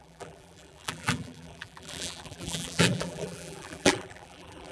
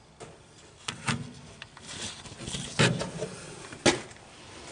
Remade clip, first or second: first